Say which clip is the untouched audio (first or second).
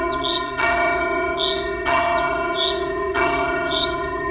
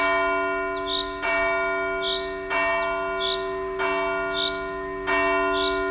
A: second